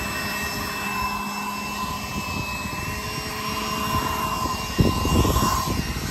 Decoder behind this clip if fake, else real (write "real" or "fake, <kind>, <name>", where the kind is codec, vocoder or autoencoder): real